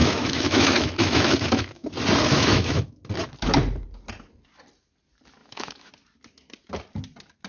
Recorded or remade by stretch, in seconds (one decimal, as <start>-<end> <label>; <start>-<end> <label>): 0.0-1.9 remade; 1.9-2.3 recorded; 2.3-3.0 remade; 3.0-5.4 recorded; 5.4-5.9 remade; 5.9-7.5 recorded